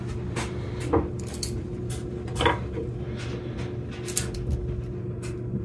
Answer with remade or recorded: recorded